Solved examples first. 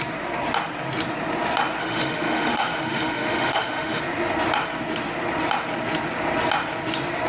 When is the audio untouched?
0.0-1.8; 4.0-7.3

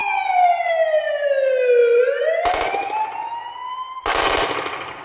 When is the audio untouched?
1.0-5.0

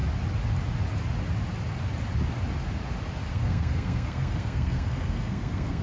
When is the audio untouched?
0.0-3.3

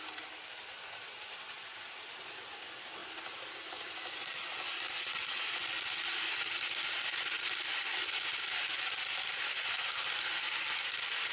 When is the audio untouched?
0.0-11.3